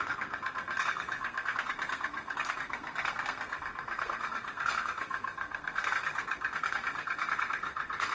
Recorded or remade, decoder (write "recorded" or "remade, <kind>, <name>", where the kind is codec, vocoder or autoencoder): remade, codec, SNAC